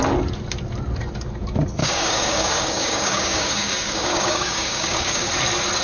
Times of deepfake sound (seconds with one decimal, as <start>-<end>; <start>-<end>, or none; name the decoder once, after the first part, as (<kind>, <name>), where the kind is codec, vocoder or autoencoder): 1.8-5.3 (codec, DAC)